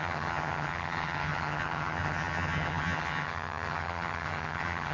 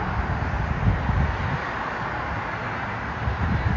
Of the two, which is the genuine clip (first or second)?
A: second